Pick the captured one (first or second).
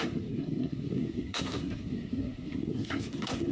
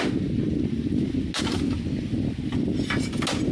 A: second